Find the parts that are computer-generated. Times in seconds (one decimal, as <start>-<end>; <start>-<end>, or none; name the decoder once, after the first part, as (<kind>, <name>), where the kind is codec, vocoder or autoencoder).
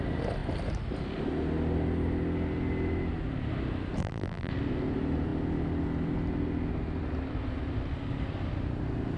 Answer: 4.0-4.5 (vocoder, BigVGAN v2)